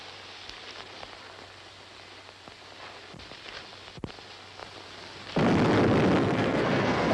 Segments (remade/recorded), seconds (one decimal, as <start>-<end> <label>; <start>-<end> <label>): 0.0-6.2 recorded; 6.2-7.1 remade